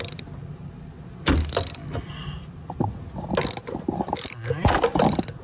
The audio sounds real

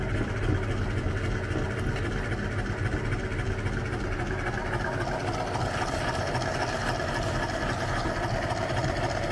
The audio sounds real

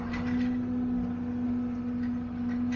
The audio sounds real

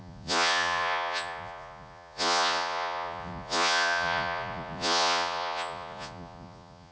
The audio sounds fake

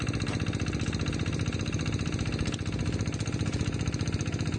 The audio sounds real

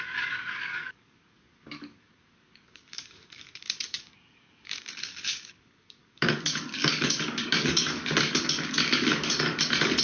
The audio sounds fake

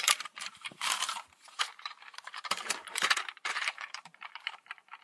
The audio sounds fake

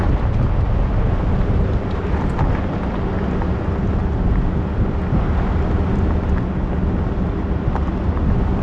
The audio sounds real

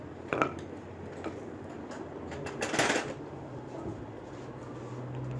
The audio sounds real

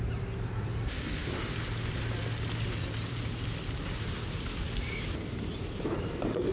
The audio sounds fake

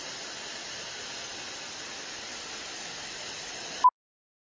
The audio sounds real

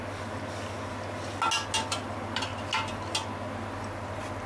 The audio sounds real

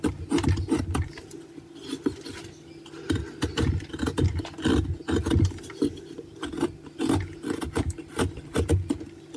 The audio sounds real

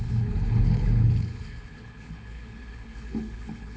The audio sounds fake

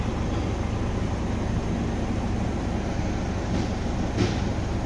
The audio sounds real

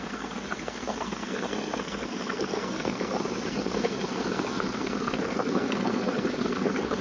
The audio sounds fake